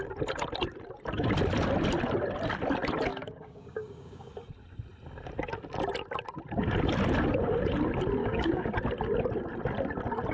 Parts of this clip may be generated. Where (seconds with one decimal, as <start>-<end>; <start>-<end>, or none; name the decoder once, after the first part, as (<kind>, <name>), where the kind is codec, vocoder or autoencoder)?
3.1-4.3 (codec, DAC); 8.2-8.7